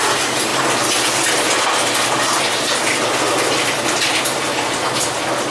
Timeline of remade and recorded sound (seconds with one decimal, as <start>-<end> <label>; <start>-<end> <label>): 0.0-5.5 recorded